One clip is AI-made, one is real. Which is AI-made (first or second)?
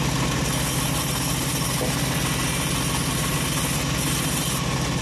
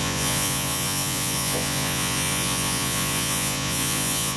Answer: second